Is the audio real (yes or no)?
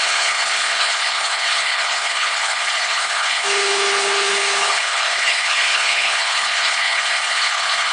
no